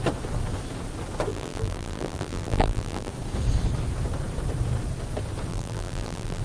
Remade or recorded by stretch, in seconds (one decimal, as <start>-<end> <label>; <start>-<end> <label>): 0.0-1.3 recorded; 1.3-3.1 remade; 3.1-5.5 recorded; 5.5-6.4 remade

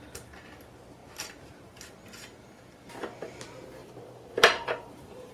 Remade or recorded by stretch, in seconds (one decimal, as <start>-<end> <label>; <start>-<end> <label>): 0.0-1.0 recorded; 1.0-2.0 remade; 2.0-3.8 recorded; 3.8-5.3 remade

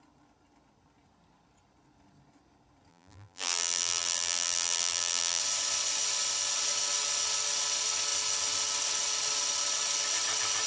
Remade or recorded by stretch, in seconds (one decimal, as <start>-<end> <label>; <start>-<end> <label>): 0.0-2.9 recorded; 2.9-5.4 remade; 5.4-10.7 recorded

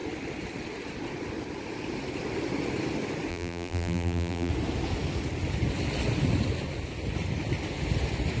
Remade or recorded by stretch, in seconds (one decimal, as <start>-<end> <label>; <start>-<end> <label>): 0.0-3.3 recorded; 3.3-4.5 remade; 4.5-8.4 recorded

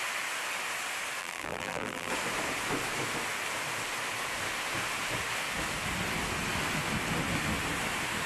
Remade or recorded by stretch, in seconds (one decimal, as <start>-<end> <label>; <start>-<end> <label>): 0.0-1.2 recorded; 1.2-2.1 remade; 2.1-8.3 recorded

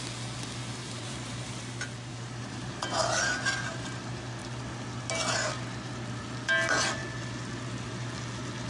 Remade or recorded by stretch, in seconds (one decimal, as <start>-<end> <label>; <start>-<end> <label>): 0.0-0.8 recorded; 0.8-1.5 remade; 1.5-2.1 recorded; 2.1-3.0 remade; 3.0-8.7 recorded

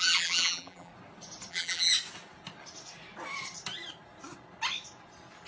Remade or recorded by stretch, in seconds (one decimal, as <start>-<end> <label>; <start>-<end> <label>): 0.0-0.9 remade; 0.9-1.5 recorded; 1.5-1.9 remade; 1.9-5.5 recorded